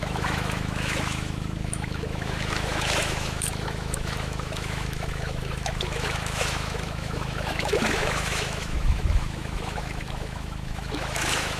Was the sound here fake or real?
fake